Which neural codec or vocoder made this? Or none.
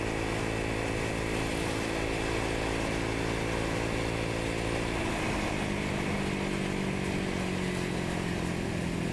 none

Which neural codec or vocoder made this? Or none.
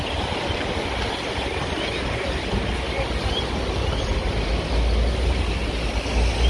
none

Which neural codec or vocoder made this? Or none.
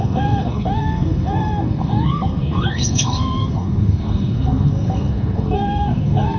codec, SNAC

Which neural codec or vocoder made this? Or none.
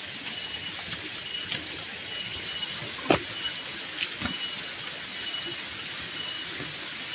none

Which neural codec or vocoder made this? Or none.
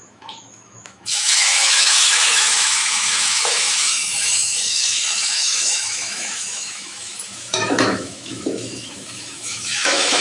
autoencoder, DAC-VAE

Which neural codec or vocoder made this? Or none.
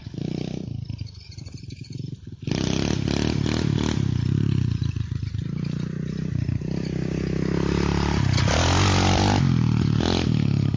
none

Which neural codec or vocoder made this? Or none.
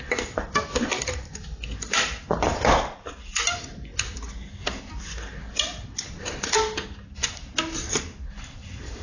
none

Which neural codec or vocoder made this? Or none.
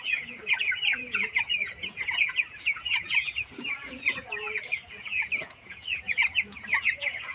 vocoder, Vocos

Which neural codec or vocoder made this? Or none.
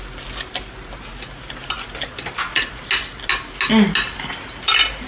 none